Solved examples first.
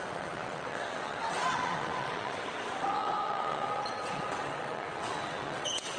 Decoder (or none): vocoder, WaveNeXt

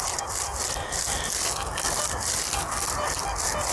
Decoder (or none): none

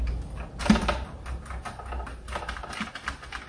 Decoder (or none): none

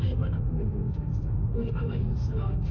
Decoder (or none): autoencoder, DAC-VAE